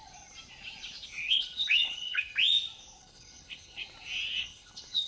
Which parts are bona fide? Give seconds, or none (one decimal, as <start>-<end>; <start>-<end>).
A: 0.0-1.1; 2.3-3.0; 3.8-4.4